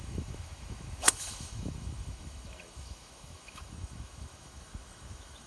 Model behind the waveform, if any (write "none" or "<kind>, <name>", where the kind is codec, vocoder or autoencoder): autoencoder, DAC-VAE